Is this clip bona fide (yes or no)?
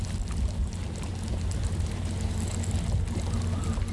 yes